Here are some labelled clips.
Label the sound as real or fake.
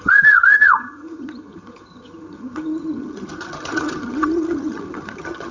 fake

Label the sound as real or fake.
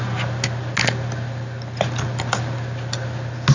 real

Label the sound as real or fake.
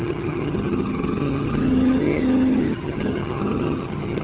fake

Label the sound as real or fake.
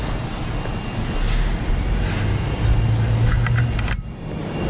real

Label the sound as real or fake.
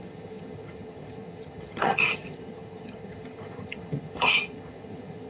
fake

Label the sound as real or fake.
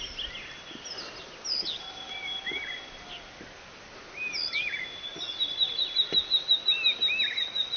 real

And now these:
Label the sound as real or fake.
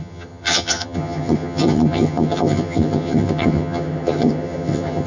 fake